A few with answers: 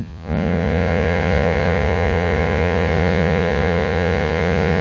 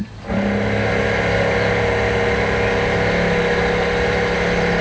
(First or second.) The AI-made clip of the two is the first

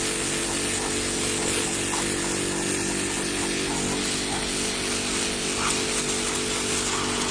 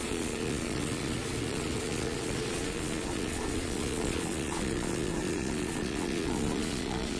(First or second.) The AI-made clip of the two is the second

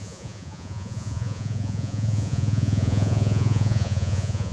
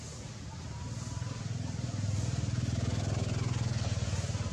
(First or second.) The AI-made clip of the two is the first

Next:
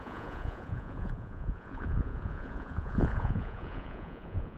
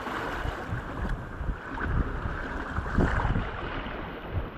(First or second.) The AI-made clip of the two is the first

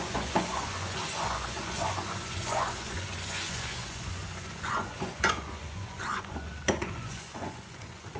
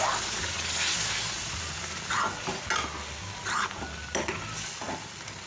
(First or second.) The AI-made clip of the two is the first